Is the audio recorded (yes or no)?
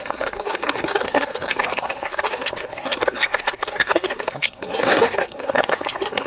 no